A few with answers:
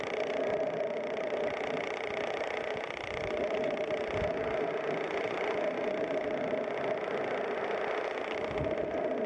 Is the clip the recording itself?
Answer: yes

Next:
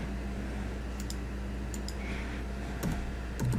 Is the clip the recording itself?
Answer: yes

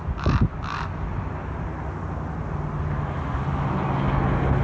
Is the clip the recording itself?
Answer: yes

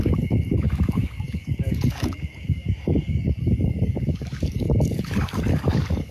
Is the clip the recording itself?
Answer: no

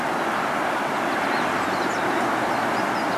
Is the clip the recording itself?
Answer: yes